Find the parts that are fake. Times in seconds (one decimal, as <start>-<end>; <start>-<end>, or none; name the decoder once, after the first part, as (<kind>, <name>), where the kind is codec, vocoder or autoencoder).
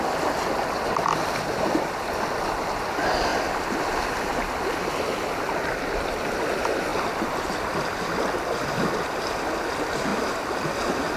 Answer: 6.9-8.3 (vocoder, BigVGAN v2)